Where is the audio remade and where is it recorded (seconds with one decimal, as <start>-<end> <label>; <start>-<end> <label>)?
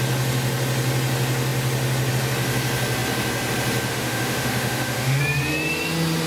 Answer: 0.0-3.9 recorded; 3.9-5.2 remade; 5.2-6.3 recorded